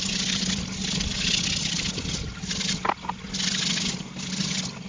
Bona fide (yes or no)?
yes